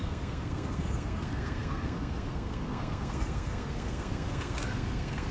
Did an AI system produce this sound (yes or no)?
yes